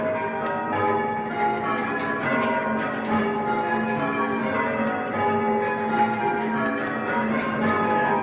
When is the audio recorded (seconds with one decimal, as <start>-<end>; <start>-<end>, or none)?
0.0-8.2